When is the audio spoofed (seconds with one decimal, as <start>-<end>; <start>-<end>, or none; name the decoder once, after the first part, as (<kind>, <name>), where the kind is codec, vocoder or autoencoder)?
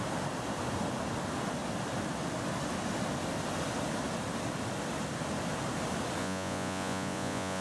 6.2-7.6 (vocoder, Vocos)